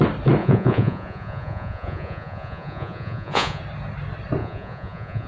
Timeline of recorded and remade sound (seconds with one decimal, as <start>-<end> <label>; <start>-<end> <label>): 0.0-0.4 recorded; 0.4-3.6 remade; 3.6-4.4 recorded; 4.4-5.3 remade